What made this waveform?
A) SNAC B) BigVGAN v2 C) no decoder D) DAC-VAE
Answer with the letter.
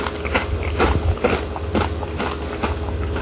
C